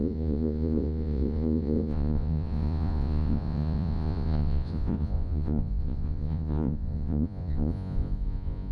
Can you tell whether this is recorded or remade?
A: remade